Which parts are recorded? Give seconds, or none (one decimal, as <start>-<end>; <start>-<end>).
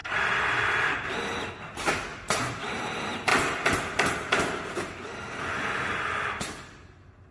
1.5-2.1; 2.8-7.3